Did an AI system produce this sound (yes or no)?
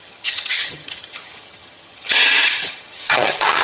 yes